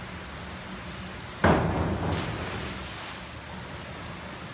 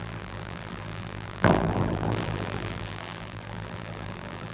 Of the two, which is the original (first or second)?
first